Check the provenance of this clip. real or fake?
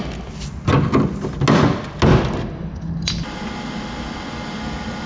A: real